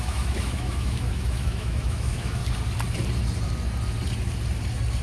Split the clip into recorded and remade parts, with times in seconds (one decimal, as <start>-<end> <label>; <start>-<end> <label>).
0.0-2.4 remade; 2.4-5.0 recorded